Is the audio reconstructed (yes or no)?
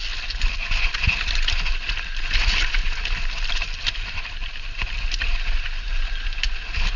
no